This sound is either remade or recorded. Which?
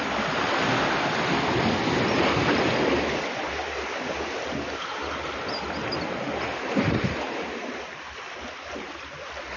recorded